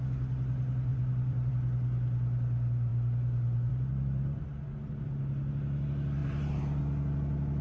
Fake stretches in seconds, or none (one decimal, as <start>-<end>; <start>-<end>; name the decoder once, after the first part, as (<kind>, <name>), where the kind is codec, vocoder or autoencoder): 0.9-1.5 (vocoder, BigVGAN v2); 6.2-6.8

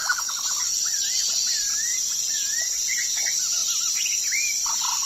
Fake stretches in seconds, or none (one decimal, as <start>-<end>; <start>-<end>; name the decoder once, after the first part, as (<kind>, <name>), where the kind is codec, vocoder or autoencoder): 0.0-1.1 (vocoder, BigVGAN v2); 1.9-2.7; 3.6-5.1

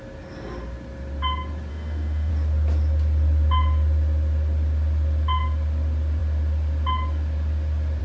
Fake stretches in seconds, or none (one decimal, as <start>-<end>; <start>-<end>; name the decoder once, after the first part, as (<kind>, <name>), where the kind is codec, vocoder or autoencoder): 1.7-2.3 (autoencoder, DAC-VAE)

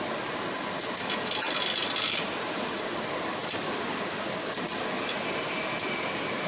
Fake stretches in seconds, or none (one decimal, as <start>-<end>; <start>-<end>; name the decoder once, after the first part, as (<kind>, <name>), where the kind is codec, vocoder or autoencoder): none

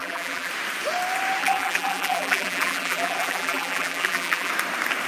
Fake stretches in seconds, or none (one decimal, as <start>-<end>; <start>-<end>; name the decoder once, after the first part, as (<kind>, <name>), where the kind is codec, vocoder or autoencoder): 0.0-0.5 (vocoder, BigVGAN v2); 1.4-4.5

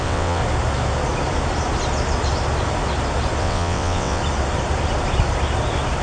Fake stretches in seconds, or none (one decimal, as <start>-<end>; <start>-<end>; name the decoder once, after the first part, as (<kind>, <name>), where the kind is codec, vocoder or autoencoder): 0.0-0.4 (vocoder, WaveNeXt); 3.4-4.2

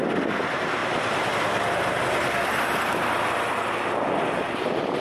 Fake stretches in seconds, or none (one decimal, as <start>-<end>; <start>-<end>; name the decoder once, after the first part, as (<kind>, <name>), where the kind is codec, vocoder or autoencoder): none

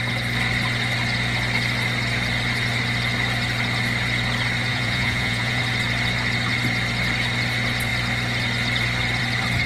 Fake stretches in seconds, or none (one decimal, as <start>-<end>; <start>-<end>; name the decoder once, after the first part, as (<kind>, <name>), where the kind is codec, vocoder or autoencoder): 4.7-5.6 (vocoder, Vocos)